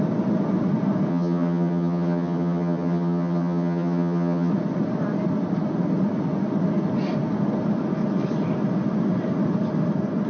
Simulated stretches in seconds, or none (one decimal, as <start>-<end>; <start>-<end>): 1.1-4.5